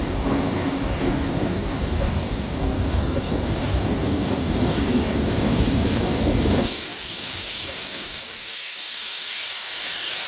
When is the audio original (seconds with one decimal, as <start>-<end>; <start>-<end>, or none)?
none